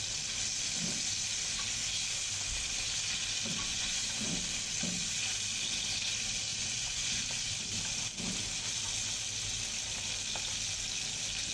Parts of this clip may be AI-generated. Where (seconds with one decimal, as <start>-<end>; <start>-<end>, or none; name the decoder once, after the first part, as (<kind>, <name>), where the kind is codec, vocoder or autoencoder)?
3.7-4.3 (vocoder, Vocos); 6.5-7.2

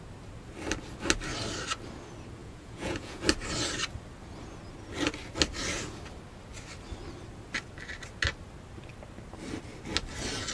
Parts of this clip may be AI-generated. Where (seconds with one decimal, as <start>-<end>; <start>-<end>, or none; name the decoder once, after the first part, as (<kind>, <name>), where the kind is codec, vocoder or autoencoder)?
2.4-3.2 (vocoder, Vocos)

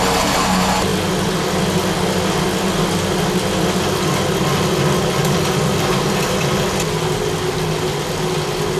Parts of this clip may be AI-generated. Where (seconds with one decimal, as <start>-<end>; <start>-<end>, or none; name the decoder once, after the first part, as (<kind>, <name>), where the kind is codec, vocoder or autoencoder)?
none

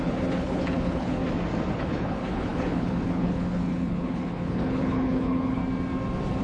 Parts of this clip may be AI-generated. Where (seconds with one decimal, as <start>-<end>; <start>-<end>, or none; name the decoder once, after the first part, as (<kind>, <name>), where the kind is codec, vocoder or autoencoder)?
0.0-1.2 (codec, HILCodec); 1.7-5.6